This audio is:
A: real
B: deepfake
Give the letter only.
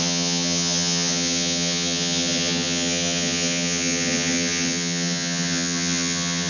B